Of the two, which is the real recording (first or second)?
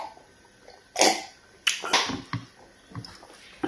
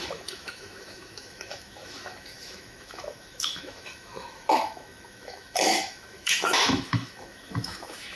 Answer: first